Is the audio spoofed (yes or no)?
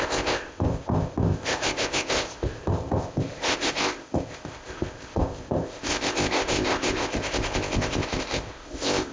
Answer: yes